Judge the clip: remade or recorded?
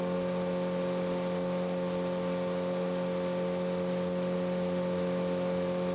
recorded